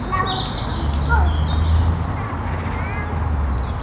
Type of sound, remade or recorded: recorded